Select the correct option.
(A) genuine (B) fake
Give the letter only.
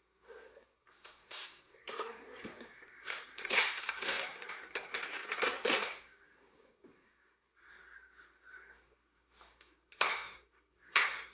B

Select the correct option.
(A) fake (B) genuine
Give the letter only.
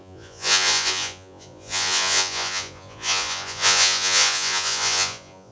A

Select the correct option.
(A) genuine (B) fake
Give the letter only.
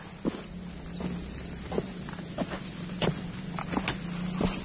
A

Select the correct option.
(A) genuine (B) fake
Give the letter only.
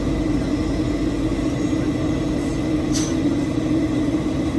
A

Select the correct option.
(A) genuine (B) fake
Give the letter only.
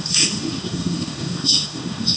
B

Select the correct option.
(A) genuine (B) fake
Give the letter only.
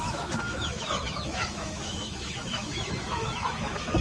B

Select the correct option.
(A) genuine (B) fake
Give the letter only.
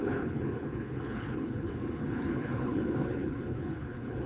B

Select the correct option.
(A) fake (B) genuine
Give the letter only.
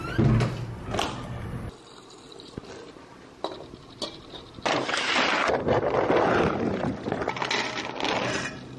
B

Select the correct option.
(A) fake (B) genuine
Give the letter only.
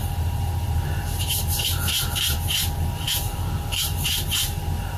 A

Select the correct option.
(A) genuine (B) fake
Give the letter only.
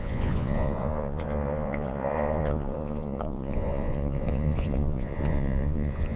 B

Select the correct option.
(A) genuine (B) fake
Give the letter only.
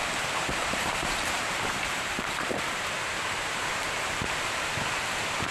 B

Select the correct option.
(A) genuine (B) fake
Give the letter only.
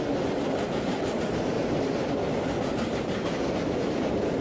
A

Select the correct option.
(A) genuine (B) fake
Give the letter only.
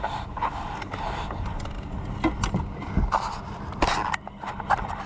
A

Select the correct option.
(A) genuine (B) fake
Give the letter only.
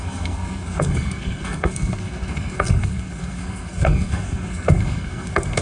B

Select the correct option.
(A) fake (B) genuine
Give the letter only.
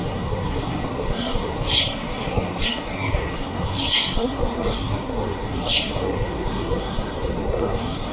A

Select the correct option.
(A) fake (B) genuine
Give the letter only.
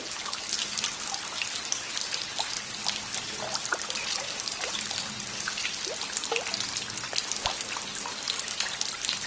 B